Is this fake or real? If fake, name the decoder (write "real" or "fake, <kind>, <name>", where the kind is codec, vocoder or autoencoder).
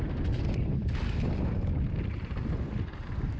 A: real